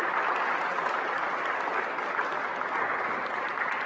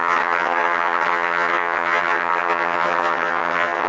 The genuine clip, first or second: first